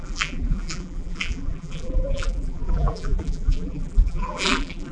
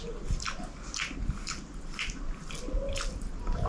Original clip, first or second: second